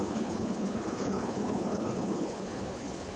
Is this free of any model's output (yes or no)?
no